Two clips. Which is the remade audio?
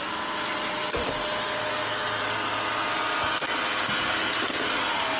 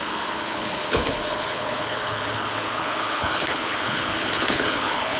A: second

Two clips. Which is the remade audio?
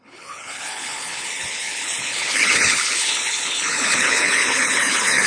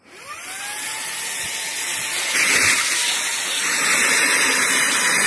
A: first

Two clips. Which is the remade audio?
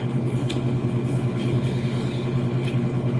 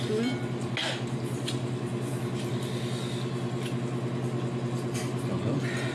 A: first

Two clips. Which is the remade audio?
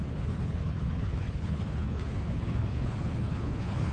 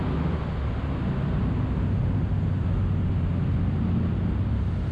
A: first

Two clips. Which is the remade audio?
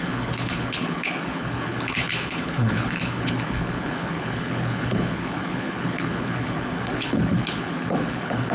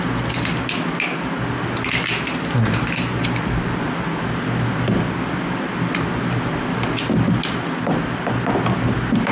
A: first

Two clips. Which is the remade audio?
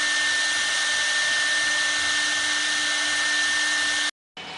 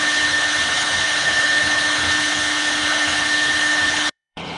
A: second